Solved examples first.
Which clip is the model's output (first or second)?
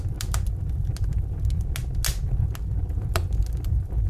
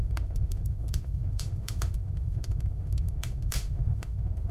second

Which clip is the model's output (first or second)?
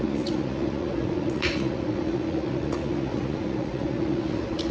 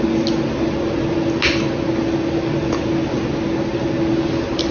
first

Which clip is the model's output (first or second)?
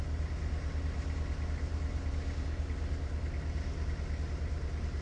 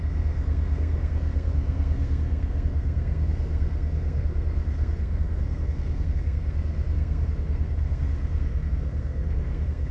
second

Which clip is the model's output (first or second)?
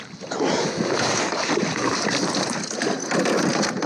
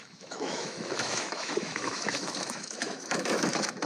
second